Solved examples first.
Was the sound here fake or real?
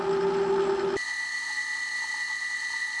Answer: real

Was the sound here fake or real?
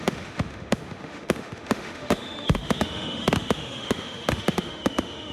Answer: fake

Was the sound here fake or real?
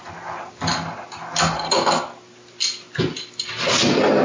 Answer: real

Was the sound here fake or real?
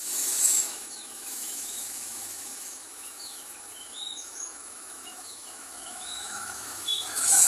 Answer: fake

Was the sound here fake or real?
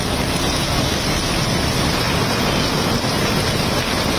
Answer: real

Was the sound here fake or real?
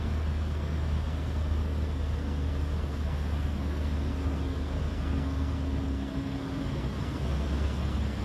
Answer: fake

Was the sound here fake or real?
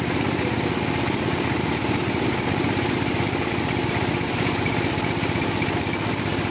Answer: real